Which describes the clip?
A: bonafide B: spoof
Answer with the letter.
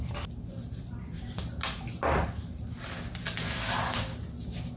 A